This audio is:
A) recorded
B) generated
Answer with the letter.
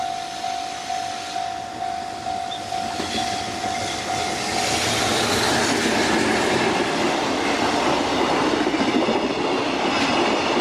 A